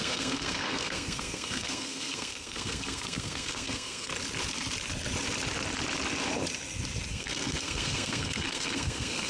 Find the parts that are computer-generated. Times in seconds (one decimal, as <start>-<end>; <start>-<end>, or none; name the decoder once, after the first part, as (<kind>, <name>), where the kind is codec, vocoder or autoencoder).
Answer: 0.0-4.1 (codec, SNAC); 7.1-9.3